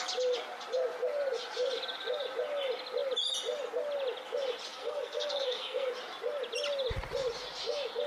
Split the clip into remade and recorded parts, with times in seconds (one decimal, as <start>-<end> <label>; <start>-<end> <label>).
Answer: 0.0-4.7 recorded; 4.7-5.9 remade; 5.9-8.1 recorded